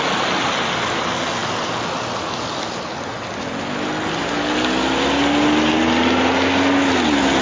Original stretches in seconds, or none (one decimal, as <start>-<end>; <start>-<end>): 0.0-7.4